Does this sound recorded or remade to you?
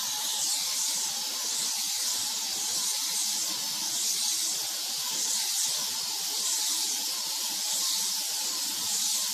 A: recorded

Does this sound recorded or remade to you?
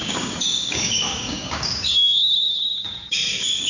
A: remade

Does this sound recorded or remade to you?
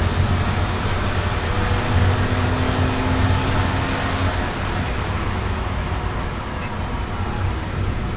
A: recorded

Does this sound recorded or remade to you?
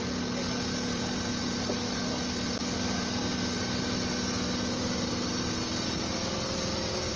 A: recorded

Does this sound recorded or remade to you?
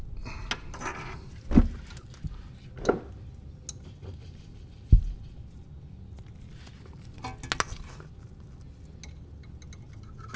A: recorded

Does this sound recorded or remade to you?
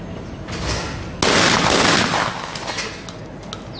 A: recorded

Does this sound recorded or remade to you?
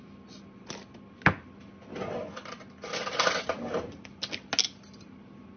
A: recorded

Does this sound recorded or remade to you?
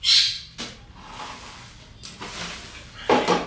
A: recorded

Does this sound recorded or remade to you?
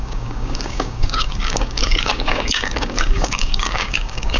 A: remade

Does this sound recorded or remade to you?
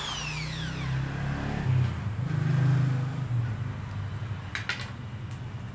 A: recorded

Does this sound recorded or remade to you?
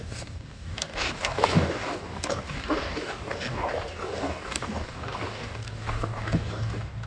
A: remade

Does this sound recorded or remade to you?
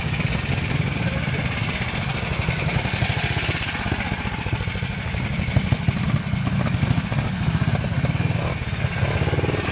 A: recorded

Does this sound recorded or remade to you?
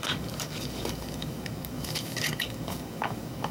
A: remade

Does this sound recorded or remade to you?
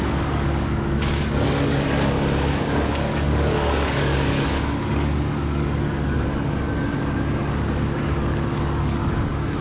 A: remade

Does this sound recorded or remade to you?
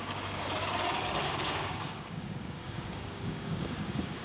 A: remade